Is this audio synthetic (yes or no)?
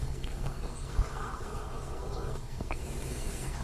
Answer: yes